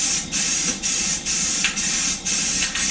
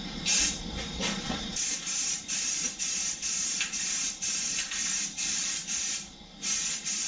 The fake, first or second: second